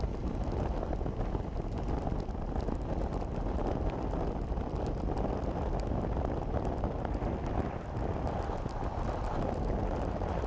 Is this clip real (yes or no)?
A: yes